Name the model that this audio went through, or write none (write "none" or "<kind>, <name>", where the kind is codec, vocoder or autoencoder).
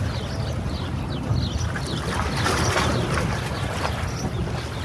none